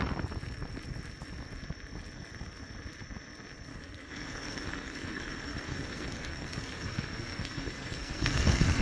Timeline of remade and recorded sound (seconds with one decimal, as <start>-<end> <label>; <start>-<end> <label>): 0.0-3.7 recorded; 3.7-8.8 remade